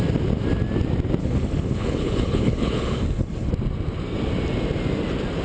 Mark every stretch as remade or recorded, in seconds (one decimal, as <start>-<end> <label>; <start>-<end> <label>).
0.0-1.2 recorded; 1.2-3.5 remade; 3.5-5.4 recorded